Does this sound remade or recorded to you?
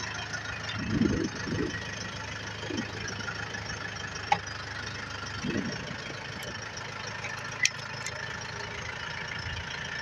recorded